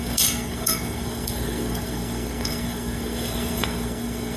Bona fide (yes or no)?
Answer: no